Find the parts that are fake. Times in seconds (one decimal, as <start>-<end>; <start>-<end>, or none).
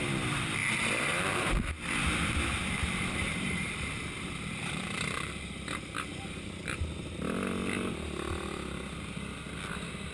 0.6-1.7; 2.8-5.3; 6.1-6.8